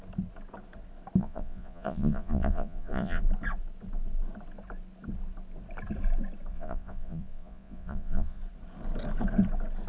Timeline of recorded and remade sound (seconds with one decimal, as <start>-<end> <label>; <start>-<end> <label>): 0.0-1.2 recorded; 1.2-3.2 remade; 3.2-6.5 recorded; 6.5-8.4 remade; 8.4-9.9 recorded